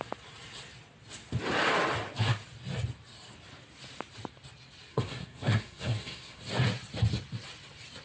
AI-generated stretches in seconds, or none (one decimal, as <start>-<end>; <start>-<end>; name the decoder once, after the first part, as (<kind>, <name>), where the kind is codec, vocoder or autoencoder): 4.9-6.4 (codec, SNAC)